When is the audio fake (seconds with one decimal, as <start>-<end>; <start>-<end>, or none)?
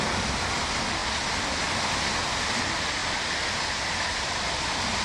none